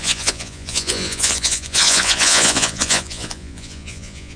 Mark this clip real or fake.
fake